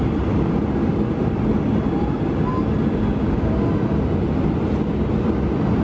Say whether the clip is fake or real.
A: real